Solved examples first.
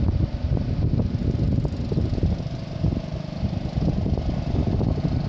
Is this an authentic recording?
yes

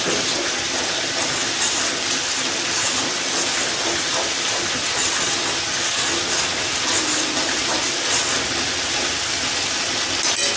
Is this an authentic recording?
yes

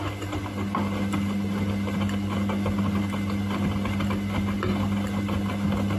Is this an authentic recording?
yes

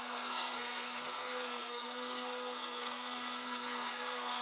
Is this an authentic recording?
no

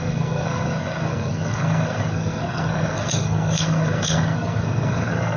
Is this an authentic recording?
no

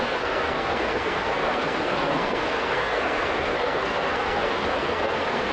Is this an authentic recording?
no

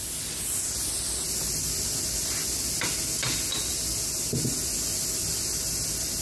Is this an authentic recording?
yes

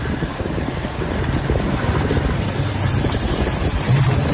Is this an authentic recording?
yes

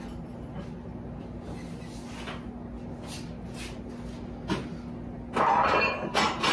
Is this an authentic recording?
yes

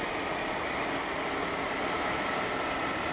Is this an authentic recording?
yes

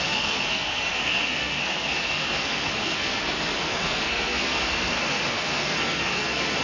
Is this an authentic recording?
no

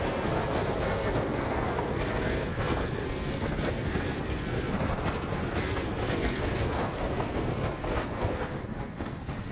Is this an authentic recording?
no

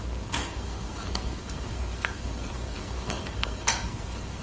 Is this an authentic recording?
no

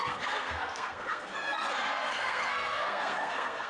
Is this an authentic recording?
no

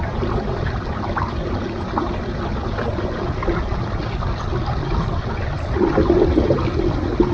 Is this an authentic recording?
yes